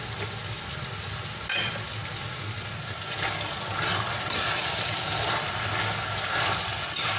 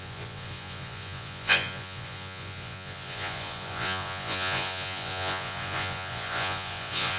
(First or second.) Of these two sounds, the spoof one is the second